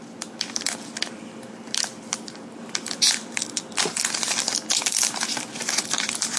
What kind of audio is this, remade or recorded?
recorded